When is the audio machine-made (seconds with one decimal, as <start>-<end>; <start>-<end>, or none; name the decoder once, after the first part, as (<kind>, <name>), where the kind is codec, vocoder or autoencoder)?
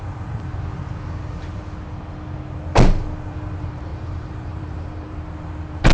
3.9-5.3 (vocoder, BigVGAN v2)